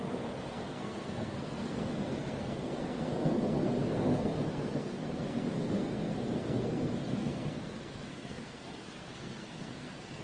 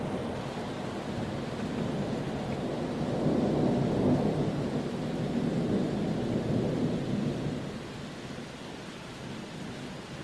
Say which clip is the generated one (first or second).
first